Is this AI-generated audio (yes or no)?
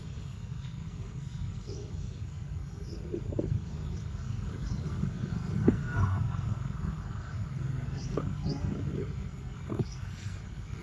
yes